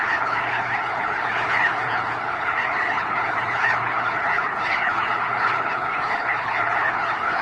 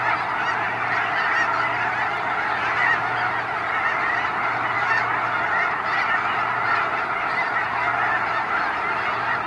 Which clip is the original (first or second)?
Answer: second